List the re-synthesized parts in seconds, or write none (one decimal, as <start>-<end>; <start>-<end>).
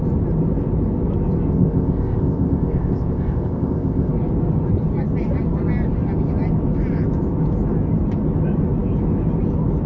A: 1.5-4.1